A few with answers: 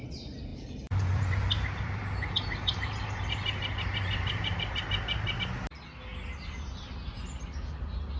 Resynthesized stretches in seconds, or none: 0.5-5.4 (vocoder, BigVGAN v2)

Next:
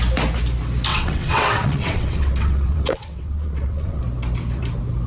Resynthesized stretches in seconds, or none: 0.9-4.0 (vocoder, WaveNeXt)

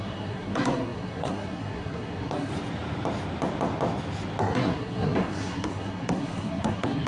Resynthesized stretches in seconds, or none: 0.0-2.5 (codec, SNAC); 4.4-7.1

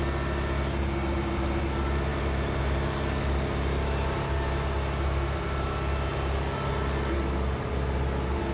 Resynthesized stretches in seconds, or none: none

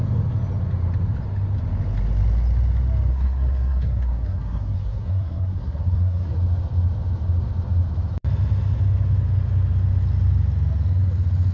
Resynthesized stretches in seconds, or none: 3.1-6.3 (codec, SNAC)

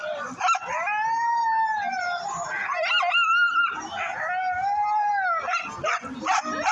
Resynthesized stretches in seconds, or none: none